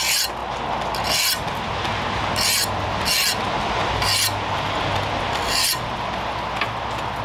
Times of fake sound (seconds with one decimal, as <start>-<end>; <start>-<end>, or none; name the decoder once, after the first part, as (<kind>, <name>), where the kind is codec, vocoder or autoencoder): none